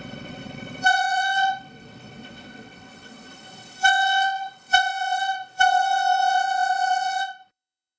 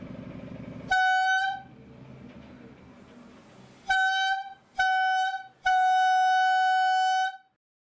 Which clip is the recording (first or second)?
second